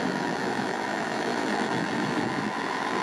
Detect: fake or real fake